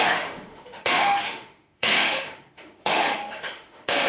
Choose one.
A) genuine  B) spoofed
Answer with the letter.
B